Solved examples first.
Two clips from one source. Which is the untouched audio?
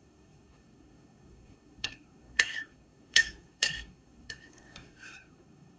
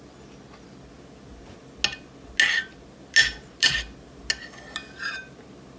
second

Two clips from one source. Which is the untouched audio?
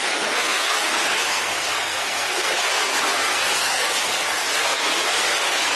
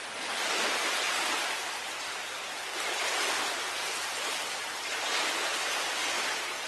second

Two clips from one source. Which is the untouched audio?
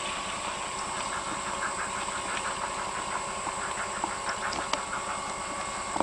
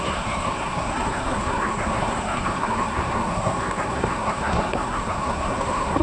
first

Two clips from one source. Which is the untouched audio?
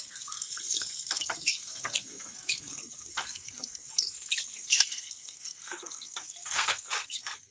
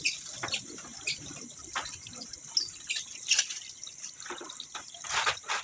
second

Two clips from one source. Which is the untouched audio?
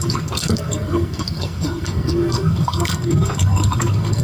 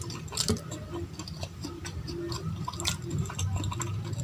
second